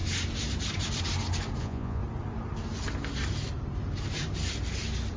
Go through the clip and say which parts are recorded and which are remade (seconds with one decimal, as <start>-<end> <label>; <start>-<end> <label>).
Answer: 0.0-1.6 recorded; 1.6-2.0 remade; 2.0-5.2 recorded

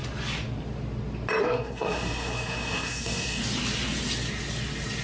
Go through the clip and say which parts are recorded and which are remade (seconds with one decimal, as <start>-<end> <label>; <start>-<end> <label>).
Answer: 0.0-1.4 recorded; 1.4-3.4 remade; 3.4-5.0 recorded

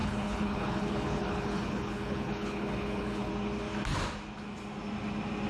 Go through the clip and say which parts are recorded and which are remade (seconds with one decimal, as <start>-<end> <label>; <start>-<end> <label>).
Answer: 0.0-3.3 remade; 3.3-5.5 recorded

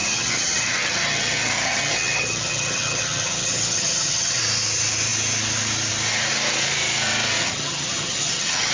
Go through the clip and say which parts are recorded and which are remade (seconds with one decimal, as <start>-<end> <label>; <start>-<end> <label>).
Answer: 0.0-4.4 remade; 4.4-7.4 recorded; 7.4-8.7 remade

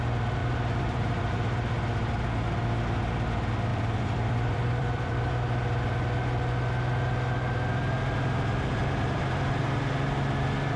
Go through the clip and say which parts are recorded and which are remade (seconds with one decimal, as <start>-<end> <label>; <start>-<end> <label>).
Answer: 0.0-0.4 recorded; 0.4-1.3 remade; 1.3-3.7 recorded; 3.7-5.3 remade; 5.3-8.8 recorded; 8.8-9.6 remade; 9.6-10.8 recorded

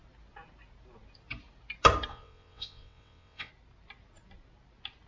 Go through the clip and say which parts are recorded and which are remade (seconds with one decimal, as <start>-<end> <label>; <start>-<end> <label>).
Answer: 0.0-2.1 recorded; 2.1-3.5 remade; 3.5-5.1 recorded

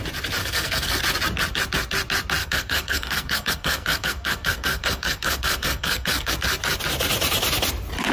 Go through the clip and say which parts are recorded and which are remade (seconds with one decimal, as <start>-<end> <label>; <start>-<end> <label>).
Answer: 0.0-0.4 recorded; 0.4-1.0 remade; 1.0-2.4 recorded; 2.4-6.3 remade; 6.3-8.1 recorded